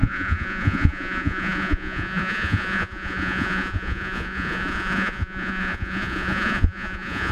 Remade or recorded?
remade